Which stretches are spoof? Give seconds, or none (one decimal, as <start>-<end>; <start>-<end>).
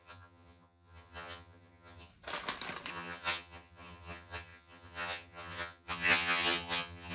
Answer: 0.0-2.1; 2.9-7.1